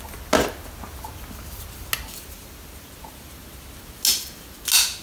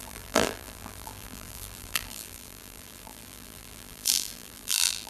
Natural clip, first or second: first